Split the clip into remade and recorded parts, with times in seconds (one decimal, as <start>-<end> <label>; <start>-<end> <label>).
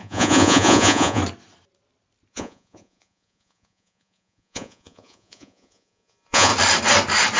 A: 0.0-1.2 remade; 1.2-2.3 recorded; 2.3-6.5 remade; 6.5-7.4 recorded